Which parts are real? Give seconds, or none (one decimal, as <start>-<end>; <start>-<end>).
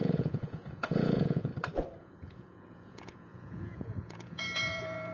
1.5-2.0